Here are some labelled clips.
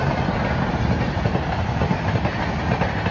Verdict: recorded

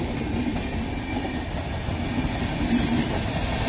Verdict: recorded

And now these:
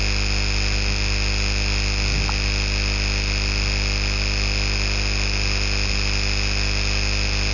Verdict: recorded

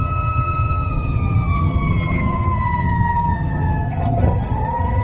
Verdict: remade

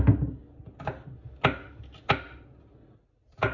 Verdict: recorded